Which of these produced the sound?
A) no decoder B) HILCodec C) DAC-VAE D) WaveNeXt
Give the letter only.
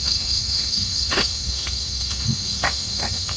C